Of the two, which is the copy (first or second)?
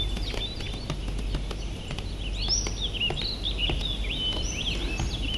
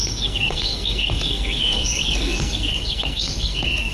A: second